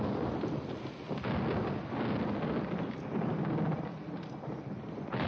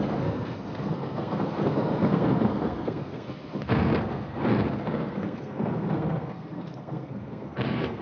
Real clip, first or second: first